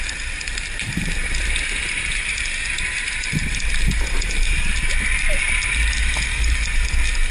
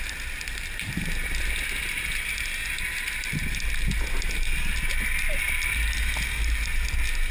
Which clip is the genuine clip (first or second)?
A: second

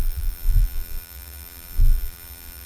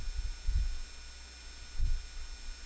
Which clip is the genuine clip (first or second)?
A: second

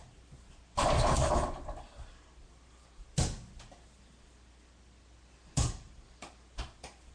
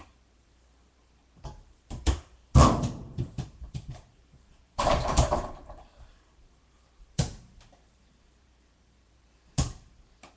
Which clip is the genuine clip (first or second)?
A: first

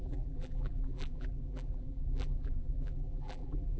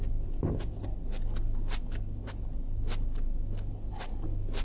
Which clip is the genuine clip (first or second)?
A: second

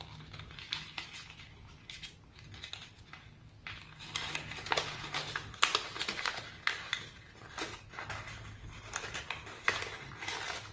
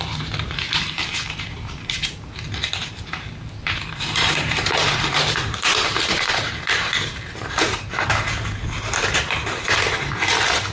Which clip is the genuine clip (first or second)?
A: first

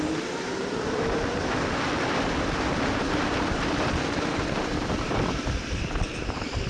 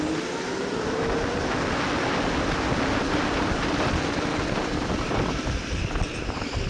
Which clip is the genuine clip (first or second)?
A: second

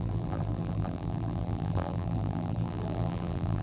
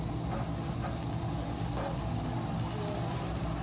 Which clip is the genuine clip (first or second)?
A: second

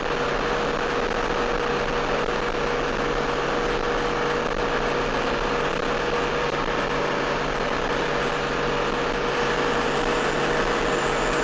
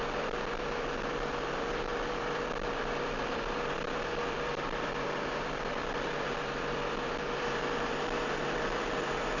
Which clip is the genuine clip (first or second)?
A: first